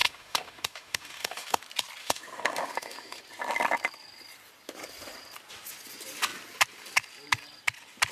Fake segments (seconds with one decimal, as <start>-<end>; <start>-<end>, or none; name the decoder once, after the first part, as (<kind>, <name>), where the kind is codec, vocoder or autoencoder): 0.0-1.6 (autoencoder, DAC-VAE); 2.0-3.2